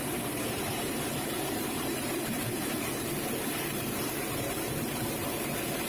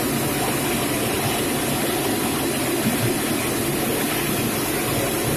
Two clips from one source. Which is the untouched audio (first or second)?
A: second